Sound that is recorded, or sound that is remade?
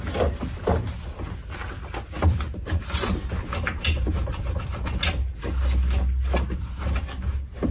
recorded